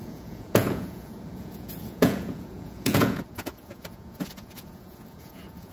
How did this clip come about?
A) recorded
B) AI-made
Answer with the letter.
B